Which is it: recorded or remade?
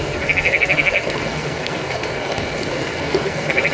remade